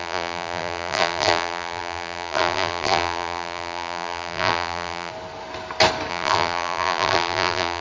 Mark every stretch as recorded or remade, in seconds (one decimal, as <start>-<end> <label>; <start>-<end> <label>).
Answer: 0.0-5.1 remade; 5.1-6.1 recorded; 6.1-7.8 remade